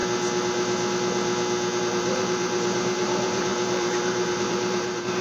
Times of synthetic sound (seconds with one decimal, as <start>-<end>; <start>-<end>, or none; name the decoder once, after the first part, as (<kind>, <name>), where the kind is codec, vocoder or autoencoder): 1.8-5.2 (vocoder, BigVGAN v2)